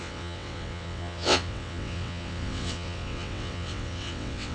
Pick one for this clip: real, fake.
fake